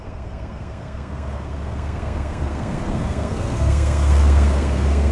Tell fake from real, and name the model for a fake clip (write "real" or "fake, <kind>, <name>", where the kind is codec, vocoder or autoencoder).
fake, codec, SNAC